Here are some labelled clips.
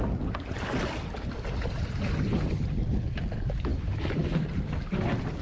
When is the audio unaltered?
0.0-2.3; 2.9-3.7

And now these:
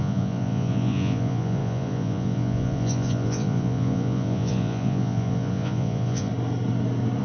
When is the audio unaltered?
6.3-7.2

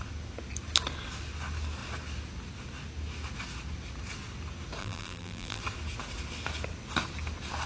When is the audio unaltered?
0.0-4.8; 5.6-7.7

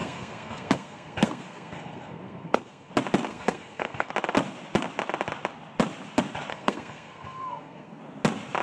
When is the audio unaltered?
2.9-3.3; 4.1-6.5; 8.0-8.6

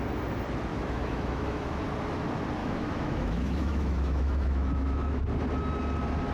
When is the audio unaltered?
0.0-0.7; 1.8-2.6; 5.2-6.3

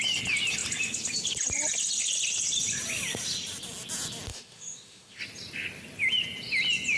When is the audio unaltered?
0.0-4.3; 5.2-7.0